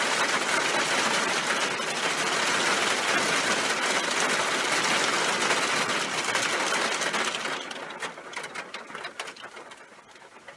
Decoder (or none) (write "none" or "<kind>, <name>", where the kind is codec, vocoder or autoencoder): none